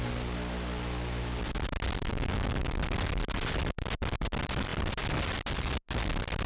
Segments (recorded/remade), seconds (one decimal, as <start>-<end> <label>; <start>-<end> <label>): 0.0-2.0 recorded; 2.0-2.6 remade; 2.6-6.5 recorded